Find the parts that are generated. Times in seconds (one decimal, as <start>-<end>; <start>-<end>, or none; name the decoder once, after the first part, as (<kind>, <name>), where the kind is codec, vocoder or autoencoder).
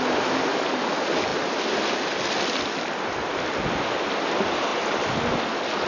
none